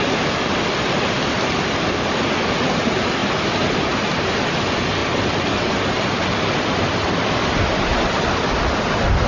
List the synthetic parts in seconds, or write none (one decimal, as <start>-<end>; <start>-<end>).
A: 5.0-5.8